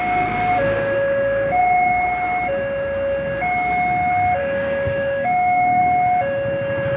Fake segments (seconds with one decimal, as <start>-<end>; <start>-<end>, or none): 0.0-1.6; 4.4-5.8